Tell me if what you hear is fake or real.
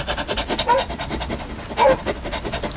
real